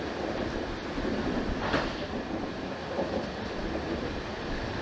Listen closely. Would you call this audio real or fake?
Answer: fake